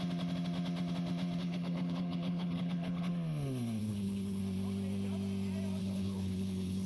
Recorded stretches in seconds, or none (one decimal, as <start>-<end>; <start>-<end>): 0.0-1.4; 3.1-3.8; 4.4-5.8